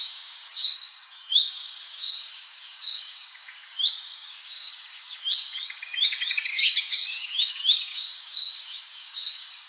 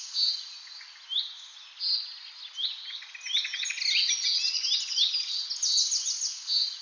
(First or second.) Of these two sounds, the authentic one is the second